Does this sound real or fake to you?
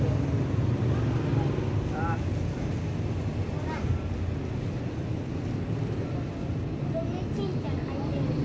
real